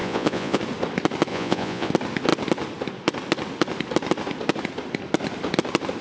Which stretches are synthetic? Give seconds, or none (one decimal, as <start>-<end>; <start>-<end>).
0.0-0.6; 1.3-1.9